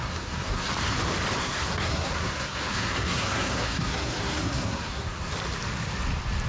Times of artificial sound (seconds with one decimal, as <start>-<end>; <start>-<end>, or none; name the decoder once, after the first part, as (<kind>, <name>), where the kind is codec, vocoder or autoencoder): 0.0-0.7 (codec, SNAC); 1.4-5.3